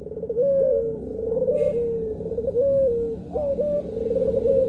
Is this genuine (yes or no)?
yes